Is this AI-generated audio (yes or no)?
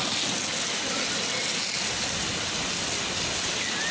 no